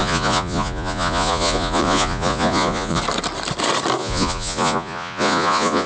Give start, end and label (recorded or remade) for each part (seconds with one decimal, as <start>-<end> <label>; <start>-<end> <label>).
0.0-3.0 remade; 3.0-4.0 recorded; 4.0-5.9 remade